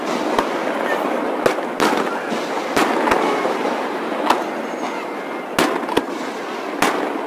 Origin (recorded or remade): recorded